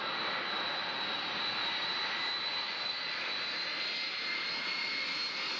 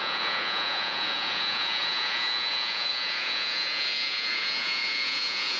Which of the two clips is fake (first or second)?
second